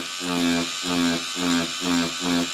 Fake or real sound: real